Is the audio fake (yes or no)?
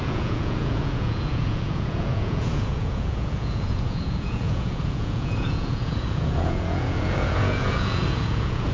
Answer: yes